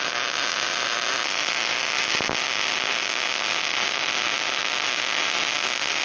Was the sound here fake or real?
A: real